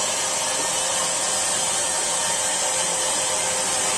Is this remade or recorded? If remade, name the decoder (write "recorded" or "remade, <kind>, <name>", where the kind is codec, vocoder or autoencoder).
recorded